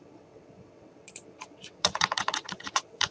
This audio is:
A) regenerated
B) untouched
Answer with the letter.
A